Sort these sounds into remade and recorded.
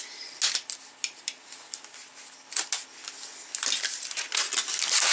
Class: recorded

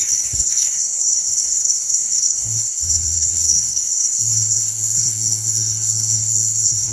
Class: remade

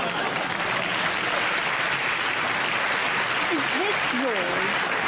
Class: recorded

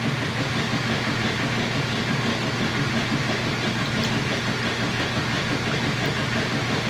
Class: recorded